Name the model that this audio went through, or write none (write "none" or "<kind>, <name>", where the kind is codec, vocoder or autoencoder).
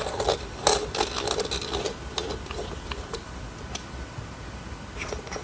none